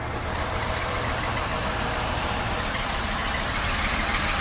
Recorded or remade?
recorded